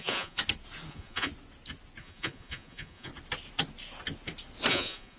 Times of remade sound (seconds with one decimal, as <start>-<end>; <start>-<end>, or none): 0.0-0.4; 0.9-1.3; 2.0-3.1; 4.7-5.2